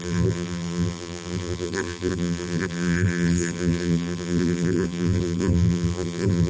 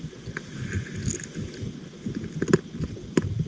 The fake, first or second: first